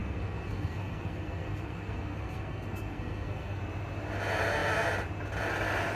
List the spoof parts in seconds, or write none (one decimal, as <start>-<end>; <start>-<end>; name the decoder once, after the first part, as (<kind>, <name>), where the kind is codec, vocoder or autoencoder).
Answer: 0.0-3.6 (codec, SNAC)